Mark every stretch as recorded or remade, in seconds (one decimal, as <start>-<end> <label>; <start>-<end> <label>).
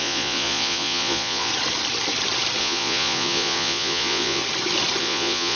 0.0-1.5 remade; 1.5-2.6 recorded; 2.6-4.4 remade; 4.4-5.0 recorded; 5.0-5.6 remade